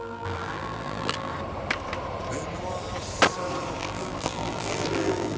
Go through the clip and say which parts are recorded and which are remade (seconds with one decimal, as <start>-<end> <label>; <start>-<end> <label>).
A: 0.0-1.3 remade; 1.3-3.8 recorded; 3.8-5.4 remade